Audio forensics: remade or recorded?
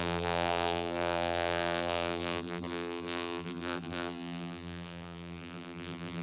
remade